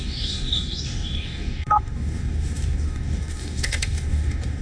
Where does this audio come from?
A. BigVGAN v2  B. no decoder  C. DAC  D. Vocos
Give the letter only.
C